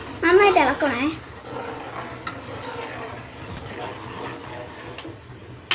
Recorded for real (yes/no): yes